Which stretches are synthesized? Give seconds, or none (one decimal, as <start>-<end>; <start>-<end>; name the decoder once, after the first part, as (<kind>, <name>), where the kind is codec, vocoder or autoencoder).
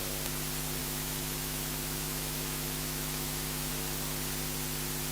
0.8-3.7 (autoencoder, DAC-VAE)